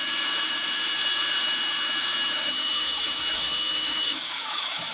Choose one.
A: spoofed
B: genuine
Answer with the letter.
A